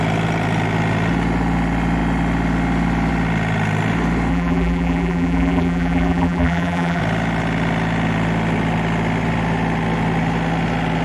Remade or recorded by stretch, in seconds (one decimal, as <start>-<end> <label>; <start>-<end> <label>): 0.0-4.3 recorded; 4.3-7.0 remade; 7.0-11.0 recorded